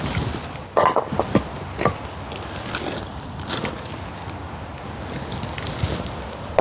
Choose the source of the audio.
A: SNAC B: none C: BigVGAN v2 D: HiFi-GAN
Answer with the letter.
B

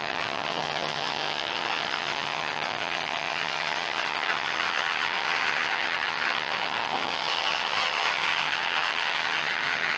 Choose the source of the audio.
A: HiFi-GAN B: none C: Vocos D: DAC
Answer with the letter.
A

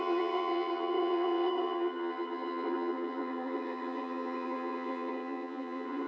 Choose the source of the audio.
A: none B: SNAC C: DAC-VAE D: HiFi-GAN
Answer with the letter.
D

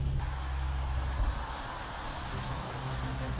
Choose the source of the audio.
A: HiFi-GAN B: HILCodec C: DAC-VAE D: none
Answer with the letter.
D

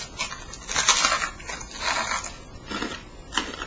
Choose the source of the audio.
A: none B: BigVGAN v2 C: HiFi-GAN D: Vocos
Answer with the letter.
A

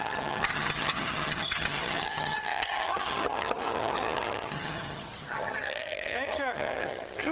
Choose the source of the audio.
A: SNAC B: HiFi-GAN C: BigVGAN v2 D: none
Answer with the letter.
B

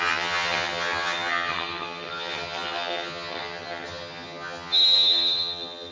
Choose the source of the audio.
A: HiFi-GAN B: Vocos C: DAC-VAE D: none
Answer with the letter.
A